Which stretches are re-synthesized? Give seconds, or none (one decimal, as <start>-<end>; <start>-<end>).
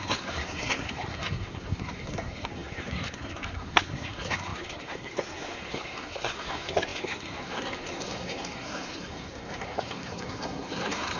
0.0-11.2